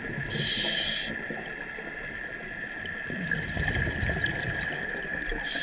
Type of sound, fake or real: real